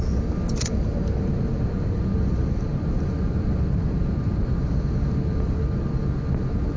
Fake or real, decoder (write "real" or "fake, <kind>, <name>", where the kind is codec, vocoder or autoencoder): real